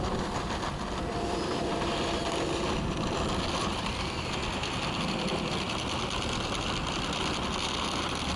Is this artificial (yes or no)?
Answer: yes